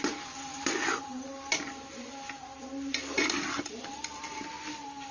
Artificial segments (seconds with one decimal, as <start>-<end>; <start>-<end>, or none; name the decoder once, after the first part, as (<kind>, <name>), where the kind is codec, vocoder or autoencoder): none